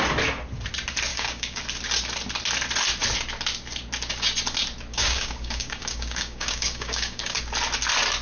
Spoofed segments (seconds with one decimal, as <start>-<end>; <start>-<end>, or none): 1.1-1.6; 4.9-7.4